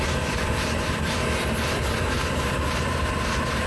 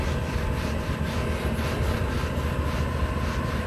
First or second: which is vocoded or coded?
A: first